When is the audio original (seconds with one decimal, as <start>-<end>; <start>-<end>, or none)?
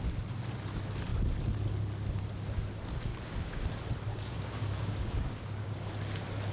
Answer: 0.0-3.1; 3.6-4.1; 5.9-6.5